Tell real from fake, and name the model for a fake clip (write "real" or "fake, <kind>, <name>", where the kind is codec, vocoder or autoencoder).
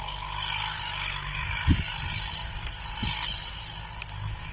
real